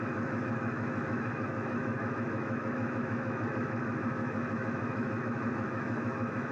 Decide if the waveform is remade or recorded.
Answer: remade